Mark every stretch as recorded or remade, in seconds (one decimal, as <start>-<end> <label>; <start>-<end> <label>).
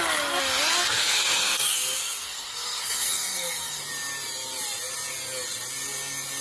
0.0-0.8 recorded; 0.8-3.8 remade; 3.8-6.4 recorded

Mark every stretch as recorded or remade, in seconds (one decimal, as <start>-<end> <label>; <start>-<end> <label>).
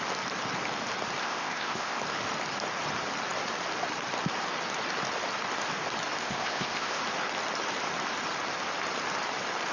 0.0-1.2 recorded; 1.2-2.0 remade; 2.0-6.2 recorded; 6.2-7.0 remade; 7.0-9.7 recorded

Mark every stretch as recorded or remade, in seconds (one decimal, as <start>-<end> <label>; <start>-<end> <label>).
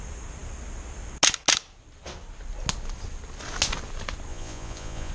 0.0-4.3 recorded; 4.3-5.1 remade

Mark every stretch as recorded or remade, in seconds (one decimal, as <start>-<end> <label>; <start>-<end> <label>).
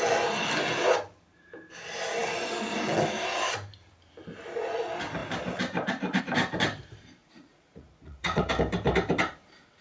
0.0-7.2 recorded; 7.2-8.5 remade; 8.5-9.8 recorded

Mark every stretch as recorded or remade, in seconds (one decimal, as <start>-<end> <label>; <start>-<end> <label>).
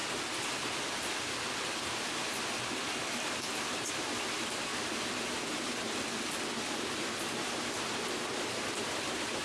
0.0-9.4 recorded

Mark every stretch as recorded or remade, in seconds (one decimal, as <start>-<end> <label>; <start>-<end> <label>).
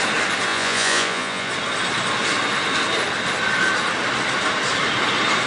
0.0-0.5 recorded; 0.5-1.5 remade; 1.5-5.5 recorded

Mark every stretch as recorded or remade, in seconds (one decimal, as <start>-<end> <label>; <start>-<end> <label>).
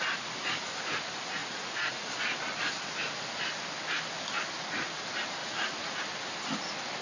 0.0-1.4 recorded; 1.4-2.1 remade; 2.1-5.4 recorded; 5.4-6.0 remade; 6.0-7.0 recorded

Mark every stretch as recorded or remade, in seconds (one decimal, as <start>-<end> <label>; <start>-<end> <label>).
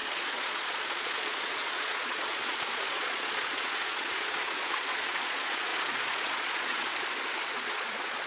0.0-6.9 remade; 6.9-7.5 recorded; 7.5-8.3 remade